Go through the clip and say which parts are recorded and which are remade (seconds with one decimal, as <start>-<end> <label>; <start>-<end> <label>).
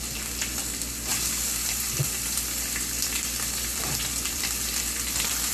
0.0-1.1 recorded; 1.1-4.4 remade; 4.4-5.5 recorded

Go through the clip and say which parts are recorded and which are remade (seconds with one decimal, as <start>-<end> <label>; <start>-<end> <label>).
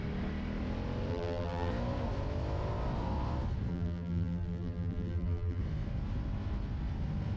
0.0-1.1 recorded; 1.1-1.7 remade; 1.7-3.7 recorded; 3.7-5.6 remade; 5.6-7.4 recorded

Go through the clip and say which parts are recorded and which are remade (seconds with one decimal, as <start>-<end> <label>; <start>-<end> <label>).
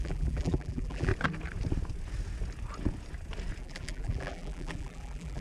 0.0-1.1 remade; 1.1-3.6 recorded; 3.6-5.4 remade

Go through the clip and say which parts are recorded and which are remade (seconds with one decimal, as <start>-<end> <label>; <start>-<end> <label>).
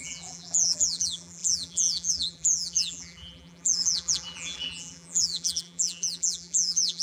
0.0-7.0 remade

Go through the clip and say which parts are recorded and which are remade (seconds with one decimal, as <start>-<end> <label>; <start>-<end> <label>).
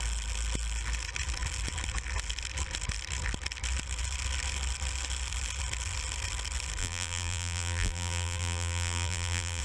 0.0-6.8 recorded; 6.8-9.6 remade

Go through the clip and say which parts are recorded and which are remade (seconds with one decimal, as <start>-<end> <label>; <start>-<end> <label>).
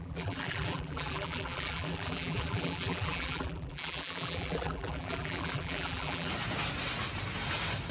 0.0-6.3 remade; 6.3-7.9 recorded